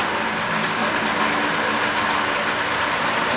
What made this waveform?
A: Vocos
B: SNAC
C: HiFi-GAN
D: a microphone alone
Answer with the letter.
D